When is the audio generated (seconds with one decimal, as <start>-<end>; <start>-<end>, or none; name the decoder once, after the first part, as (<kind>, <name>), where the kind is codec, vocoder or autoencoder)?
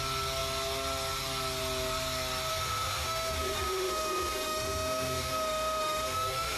2.5-6.6 (autoencoder, DAC-VAE)